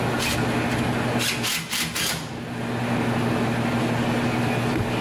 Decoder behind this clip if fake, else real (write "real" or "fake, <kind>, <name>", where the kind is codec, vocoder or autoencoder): real